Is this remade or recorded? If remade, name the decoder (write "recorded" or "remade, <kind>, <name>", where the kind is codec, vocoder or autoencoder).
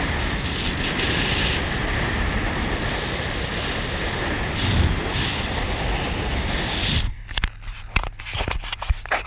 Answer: recorded